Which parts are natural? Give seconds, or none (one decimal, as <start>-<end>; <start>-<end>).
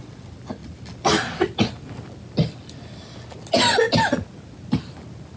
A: 0.0-5.4